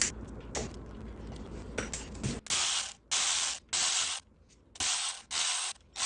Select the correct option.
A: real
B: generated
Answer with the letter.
A